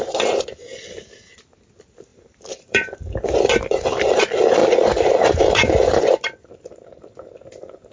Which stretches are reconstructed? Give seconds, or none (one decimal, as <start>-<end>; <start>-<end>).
2.1-4.1; 4.6-6.1